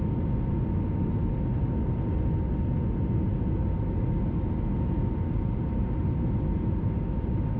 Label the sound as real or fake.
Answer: real